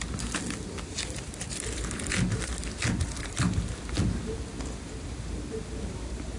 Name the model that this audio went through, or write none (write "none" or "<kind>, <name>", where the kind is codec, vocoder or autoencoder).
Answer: vocoder, BigVGAN v2